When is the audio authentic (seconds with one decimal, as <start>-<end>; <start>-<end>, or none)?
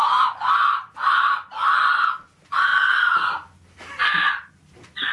0.0-5.1